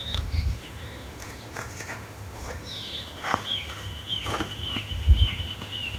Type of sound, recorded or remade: remade